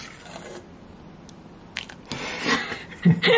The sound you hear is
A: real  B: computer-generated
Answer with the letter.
A